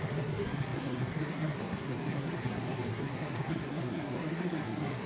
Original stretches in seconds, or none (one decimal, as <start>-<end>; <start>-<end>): none